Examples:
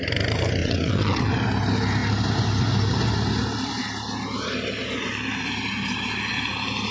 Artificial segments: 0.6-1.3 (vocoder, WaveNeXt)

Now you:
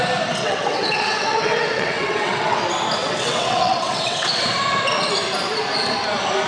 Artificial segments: 0.4-2.6 (vocoder, WaveNeXt); 3.0-4.4

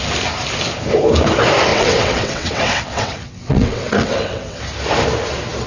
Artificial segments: 1.7-4.6 (vocoder, WaveNeXt)

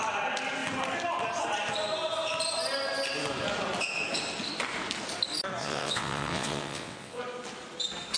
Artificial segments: 5.6-7.2 (vocoder, WaveNeXt)

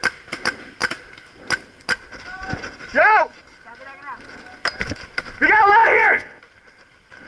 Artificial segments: 5.8-6.4 (vocoder, WaveNeXt)